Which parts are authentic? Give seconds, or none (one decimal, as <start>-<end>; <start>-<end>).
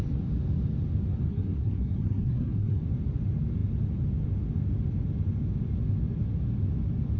0.0-1.3; 2.8-7.2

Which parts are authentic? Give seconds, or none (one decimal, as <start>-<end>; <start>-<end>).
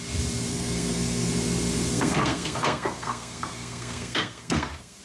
0.0-0.5; 1.3-1.9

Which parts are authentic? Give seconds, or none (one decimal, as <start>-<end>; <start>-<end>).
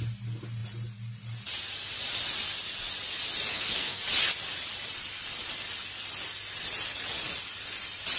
0.0-3.5; 4.0-8.2